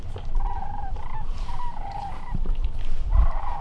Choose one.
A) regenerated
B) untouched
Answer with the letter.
A